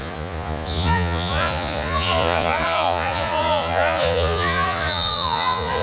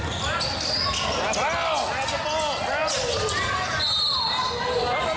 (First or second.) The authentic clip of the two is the second